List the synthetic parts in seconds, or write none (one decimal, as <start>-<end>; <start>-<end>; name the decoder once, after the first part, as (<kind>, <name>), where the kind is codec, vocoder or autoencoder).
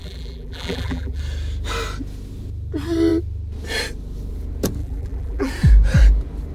0.0-1.2 (vocoder, BigVGAN v2); 4.8-5.5